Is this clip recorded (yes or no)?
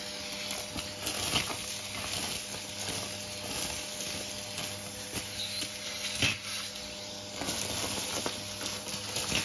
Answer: yes